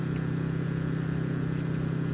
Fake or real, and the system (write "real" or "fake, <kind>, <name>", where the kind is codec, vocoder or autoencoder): real